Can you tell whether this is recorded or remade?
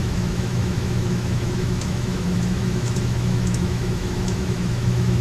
remade